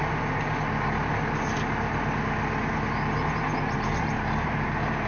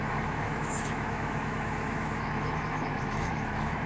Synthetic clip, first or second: second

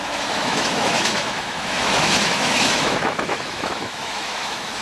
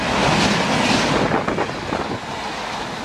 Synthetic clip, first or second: first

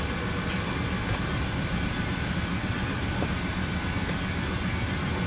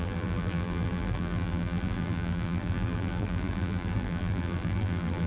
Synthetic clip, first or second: second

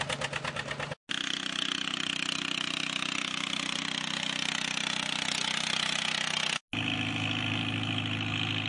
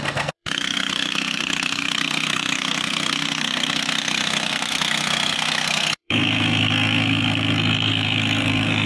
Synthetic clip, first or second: second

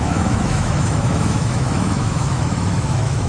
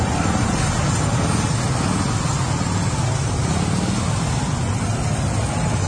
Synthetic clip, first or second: first